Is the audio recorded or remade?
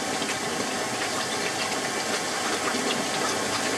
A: recorded